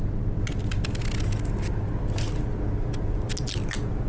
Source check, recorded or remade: recorded